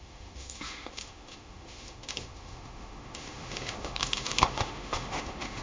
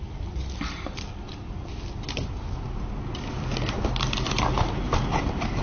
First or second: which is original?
second